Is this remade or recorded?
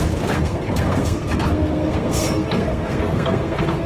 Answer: remade